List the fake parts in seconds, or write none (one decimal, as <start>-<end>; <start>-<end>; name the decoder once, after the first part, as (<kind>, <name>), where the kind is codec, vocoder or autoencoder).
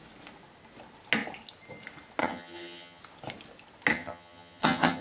2.2-3.0 (vocoder, HiFi-GAN); 3.9-5.0